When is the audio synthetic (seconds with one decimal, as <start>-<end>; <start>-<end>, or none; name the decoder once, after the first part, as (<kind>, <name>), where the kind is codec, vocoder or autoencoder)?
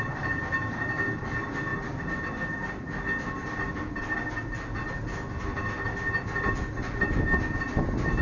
none